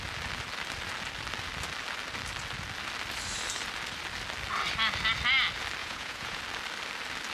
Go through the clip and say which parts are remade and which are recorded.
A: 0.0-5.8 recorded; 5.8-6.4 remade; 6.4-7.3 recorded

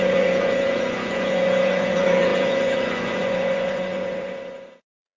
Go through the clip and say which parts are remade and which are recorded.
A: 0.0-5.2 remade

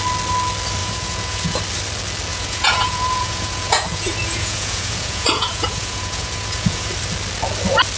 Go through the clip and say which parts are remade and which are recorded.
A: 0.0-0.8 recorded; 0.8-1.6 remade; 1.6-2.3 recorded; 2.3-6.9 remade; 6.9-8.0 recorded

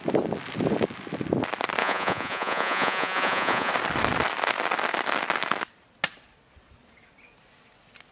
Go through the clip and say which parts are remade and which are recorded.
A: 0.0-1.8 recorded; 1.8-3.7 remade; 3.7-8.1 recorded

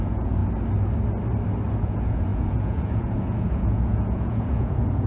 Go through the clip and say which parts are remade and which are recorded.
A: 0.0-0.4 remade; 0.4-1.8 recorded; 1.8-5.1 remade

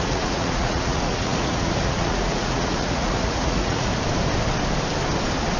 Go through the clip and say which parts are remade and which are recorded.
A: 0.0-3.9 remade; 3.9-5.6 recorded

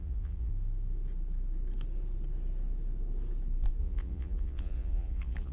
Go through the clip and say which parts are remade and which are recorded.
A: 0.0-0.5 remade; 0.5-3.8 recorded; 3.8-5.5 remade

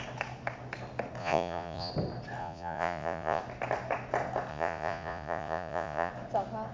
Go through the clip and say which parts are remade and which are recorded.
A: 0.0-1.2 recorded; 1.2-1.9 remade; 1.9-2.4 recorded; 2.4-3.4 remade; 3.4-4.5 recorded; 4.5-6.1 remade; 6.1-6.7 recorded